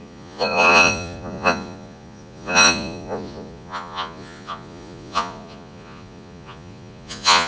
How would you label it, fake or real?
fake